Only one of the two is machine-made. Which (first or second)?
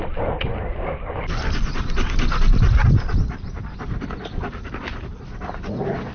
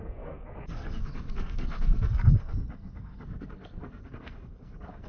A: second